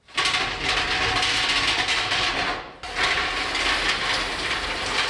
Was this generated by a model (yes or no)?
no